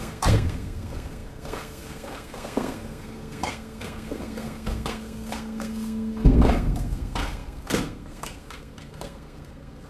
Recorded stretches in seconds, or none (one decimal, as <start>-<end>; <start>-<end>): none